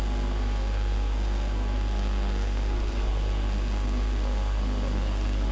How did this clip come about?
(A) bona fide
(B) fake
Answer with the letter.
B